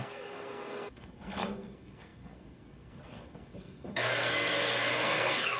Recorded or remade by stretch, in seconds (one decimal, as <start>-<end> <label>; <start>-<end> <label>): 0.0-5.6 remade